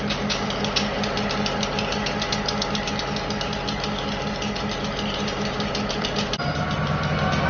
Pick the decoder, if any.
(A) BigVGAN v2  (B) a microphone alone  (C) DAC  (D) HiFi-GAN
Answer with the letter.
B